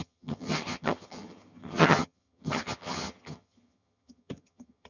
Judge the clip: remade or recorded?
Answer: remade